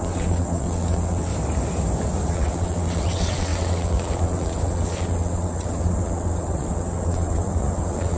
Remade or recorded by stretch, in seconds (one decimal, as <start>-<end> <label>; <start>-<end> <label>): 0.0-1.3 remade; 1.3-2.3 recorded; 2.3-8.2 remade